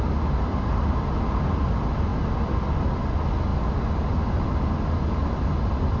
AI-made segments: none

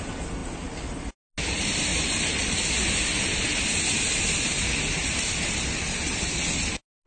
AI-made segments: none